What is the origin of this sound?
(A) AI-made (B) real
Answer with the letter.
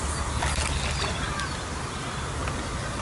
B